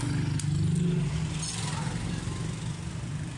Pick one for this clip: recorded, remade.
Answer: recorded